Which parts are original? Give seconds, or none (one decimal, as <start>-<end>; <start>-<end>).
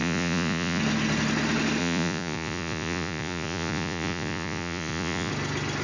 0.8-1.8; 5.3-5.8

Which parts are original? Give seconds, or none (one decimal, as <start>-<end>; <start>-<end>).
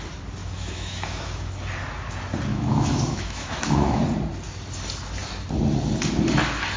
0.0-0.4; 1.5-2.5; 4.0-6.8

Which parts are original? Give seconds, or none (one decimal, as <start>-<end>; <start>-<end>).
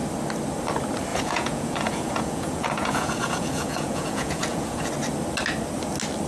0.0-1.1; 4.9-6.3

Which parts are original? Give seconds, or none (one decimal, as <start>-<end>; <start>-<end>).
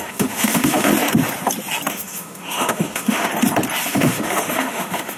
0.9-1.9; 3.3-3.9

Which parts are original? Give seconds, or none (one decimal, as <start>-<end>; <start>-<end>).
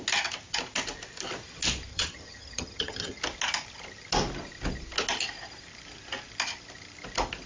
0.0-1.9; 3.2-7.5